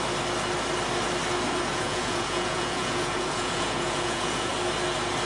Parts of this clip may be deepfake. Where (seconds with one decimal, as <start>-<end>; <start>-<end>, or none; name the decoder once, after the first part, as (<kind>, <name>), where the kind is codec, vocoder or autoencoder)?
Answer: 1.7-4.5 (vocoder, Vocos)